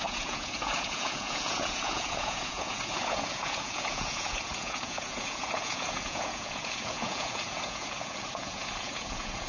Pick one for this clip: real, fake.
fake